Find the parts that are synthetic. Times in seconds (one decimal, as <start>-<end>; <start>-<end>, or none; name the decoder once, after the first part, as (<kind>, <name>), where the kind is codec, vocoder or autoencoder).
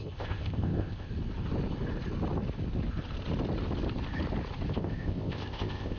0.0-1.1 (codec, ZipCodec); 4.7-6.0